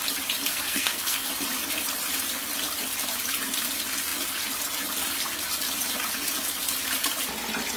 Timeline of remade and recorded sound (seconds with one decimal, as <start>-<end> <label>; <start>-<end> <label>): 0.0-0.5 recorded; 0.5-1.3 remade; 1.3-7.8 recorded